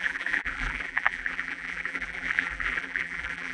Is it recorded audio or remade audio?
remade